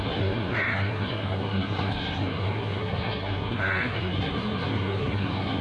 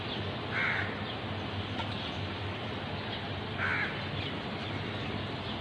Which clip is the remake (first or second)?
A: first